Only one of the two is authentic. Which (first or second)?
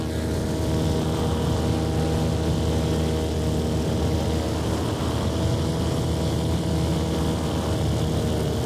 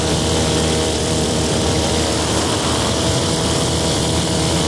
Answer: first